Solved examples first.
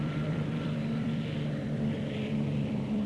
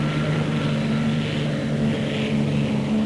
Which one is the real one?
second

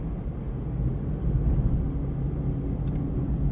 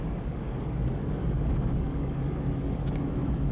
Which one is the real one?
first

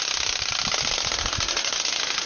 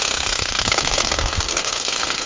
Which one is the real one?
first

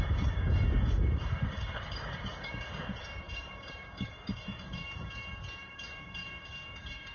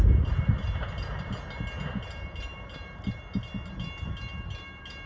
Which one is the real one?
second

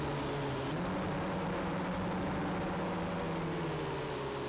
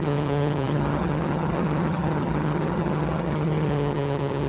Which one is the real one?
first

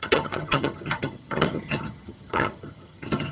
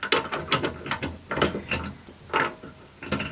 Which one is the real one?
second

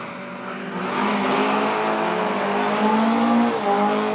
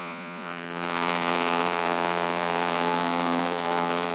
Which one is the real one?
first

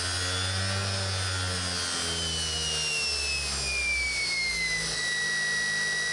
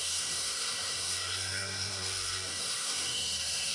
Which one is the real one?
first